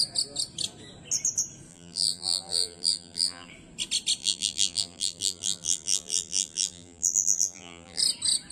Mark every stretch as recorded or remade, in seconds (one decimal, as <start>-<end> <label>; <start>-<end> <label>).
0.0-1.7 recorded; 1.7-3.5 remade; 3.5-4.2 recorded; 4.2-8.0 remade; 8.0-8.5 recorded